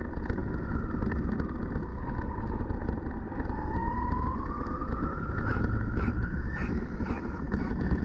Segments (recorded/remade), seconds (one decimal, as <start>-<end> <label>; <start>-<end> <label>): 0.0-1.9 recorded; 1.9-2.6 remade; 2.6-3.8 recorded; 3.8-8.0 remade